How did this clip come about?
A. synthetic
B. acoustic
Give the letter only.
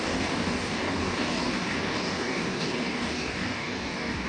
A